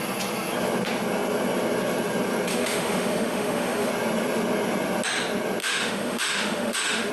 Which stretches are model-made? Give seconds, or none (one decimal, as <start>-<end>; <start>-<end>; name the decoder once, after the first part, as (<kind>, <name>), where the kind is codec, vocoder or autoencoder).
2.5-3.9 (autoencoder, DAC-VAE); 5.6-7.1